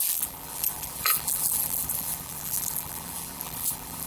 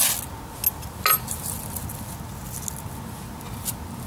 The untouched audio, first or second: second